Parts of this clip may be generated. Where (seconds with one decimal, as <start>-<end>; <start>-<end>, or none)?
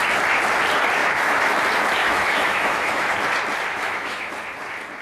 1.0-1.6; 2.0-3.1; 3.7-4.3